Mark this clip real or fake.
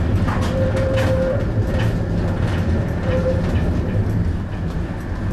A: real